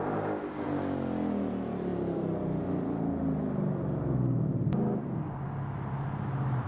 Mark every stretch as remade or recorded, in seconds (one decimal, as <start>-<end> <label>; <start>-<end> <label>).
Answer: 0.0-6.7 recorded